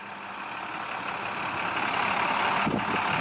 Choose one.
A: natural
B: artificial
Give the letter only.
A